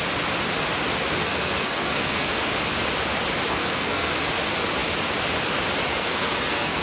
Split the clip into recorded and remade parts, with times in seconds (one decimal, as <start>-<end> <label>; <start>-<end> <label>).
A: 0.0-1.2 recorded; 1.2-2.4 remade; 2.4-3.5 recorded; 3.5-4.1 remade; 4.1-5.9 recorded; 5.9-6.8 remade